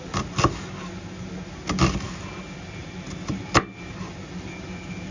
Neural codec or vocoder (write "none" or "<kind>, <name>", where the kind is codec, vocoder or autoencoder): none